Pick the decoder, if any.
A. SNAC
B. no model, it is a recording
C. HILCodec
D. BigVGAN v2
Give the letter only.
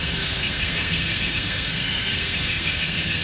A